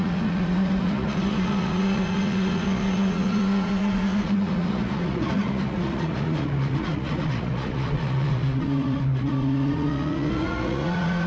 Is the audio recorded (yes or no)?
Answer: no